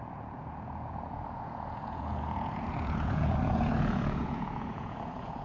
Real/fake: fake